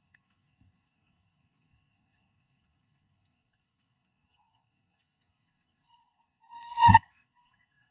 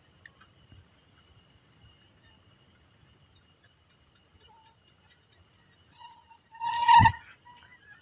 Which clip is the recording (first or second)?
second